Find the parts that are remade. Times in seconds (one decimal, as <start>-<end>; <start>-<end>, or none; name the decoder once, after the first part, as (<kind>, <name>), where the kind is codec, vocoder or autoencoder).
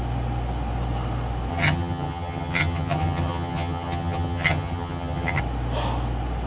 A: 1.5-5.4 (vocoder, HiFi-GAN)